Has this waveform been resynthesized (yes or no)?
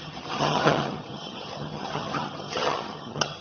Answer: yes